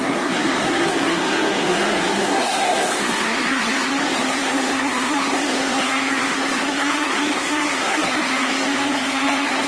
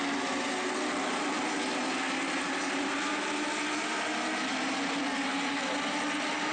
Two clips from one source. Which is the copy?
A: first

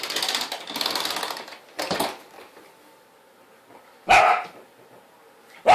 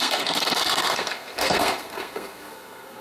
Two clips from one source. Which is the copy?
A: second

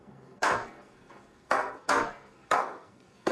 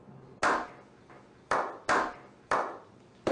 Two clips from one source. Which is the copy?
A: first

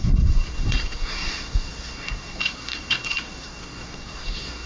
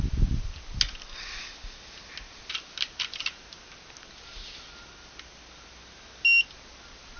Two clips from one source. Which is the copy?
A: first